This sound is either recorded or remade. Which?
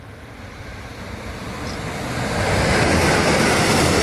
remade